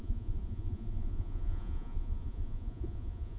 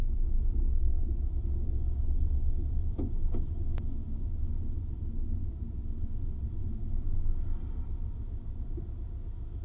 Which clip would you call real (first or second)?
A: second